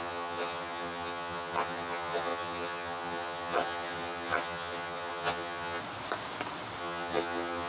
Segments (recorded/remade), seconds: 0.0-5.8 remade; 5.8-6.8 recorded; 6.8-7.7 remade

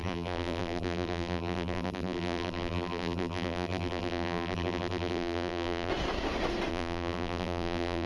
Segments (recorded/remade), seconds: 0.0-5.9 remade; 5.9-6.7 recorded; 6.7-8.1 remade

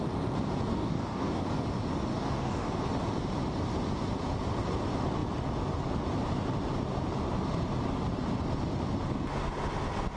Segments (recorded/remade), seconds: 0.0-0.7 recorded; 0.7-1.4 remade; 1.4-2.1 recorded; 2.1-2.7 remade; 2.7-10.2 recorded

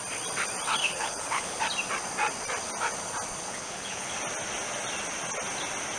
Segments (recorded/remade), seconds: 0.0-0.8 recorded; 0.8-1.6 remade; 1.6-3.5 recorded; 3.5-4.1 remade; 4.1-6.0 recorded